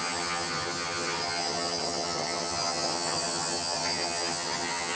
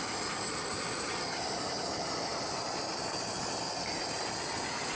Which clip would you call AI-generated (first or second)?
first